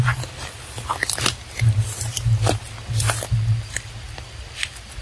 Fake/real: real